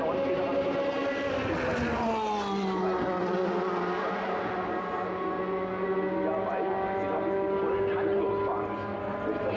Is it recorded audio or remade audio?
recorded